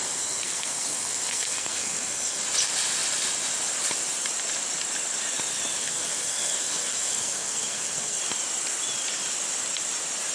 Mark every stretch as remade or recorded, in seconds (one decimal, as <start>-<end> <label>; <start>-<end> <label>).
0.0-2.4 remade; 2.4-5.8 recorded; 5.8-8.2 remade; 8.2-10.3 recorded